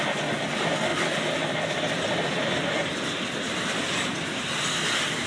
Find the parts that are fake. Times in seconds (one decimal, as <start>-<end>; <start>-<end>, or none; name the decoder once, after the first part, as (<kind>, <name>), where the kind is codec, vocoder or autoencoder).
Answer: none